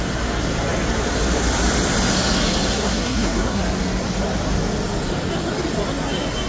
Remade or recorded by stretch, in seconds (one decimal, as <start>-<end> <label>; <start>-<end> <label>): 0.0-2.7 recorded; 2.7-3.6 remade; 3.6-6.5 recorded